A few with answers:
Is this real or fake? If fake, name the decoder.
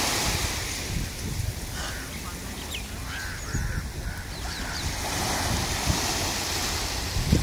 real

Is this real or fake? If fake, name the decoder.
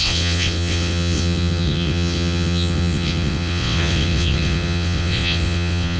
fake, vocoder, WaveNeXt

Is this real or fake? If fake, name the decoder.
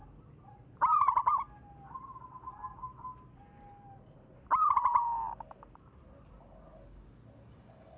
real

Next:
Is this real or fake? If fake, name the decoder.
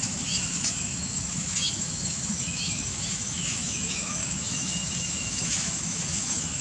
fake, autoencoder, DAC-VAE